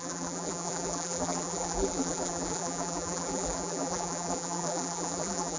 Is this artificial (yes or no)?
yes